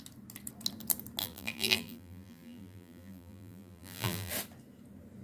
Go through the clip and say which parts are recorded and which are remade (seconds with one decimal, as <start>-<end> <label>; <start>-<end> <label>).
0.0-1.2 recorded; 1.2-4.3 remade; 4.3-5.2 recorded